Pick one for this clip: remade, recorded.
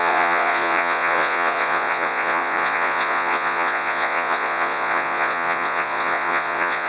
remade